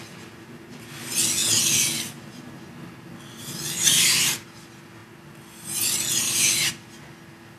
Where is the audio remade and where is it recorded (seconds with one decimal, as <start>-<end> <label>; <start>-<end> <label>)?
0.0-7.6 recorded